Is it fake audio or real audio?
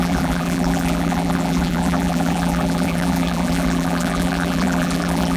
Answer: fake